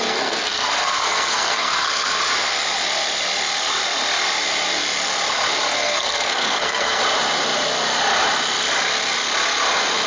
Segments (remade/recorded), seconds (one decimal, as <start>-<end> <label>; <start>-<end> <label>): 0.0-2.2 remade; 2.2-5.7 recorded; 5.7-7.0 remade; 7.0-10.1 recorded

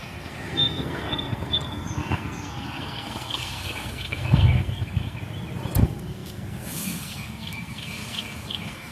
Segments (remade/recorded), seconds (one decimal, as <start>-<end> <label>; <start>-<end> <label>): 0.0-5.2 remade; 5.2-5.8 recorded; 5.8-8.9 remade

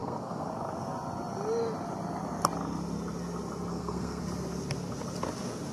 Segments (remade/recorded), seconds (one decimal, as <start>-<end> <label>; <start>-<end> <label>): 0.0-0.5 remade; 0.5-3.7 recorded; 3.7-4.2 remade; 4.2-5.7 recorded

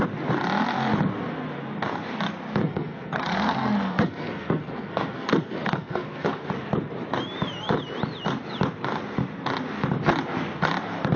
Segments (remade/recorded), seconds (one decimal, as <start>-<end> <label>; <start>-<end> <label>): 0.0-2.6 recorded; 2.6-6.5 remade; 6.5-11.2 recorded

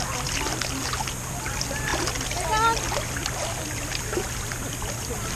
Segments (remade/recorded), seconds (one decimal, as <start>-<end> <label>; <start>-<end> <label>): 0.0-5.4 recorded